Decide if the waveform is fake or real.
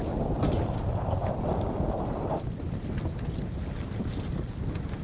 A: real